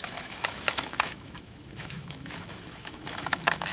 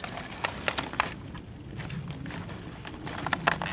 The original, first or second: second